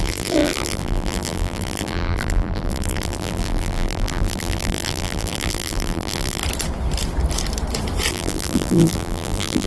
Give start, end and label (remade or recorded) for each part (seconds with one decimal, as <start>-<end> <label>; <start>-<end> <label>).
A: 0.0-6.4 remade; 6.4-8.1 recorded; 8.1-9.7 remade